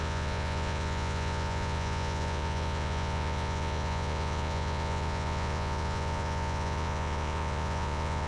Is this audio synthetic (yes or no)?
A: yes